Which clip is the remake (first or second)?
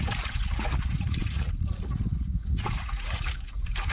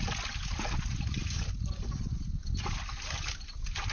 first